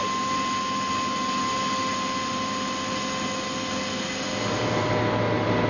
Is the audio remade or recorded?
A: recorded